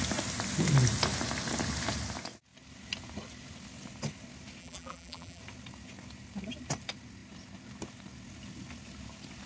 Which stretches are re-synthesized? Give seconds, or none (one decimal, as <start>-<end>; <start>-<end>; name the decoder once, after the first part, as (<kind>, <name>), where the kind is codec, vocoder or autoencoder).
4.6-5.4 (vocoder, BigVGAN v2)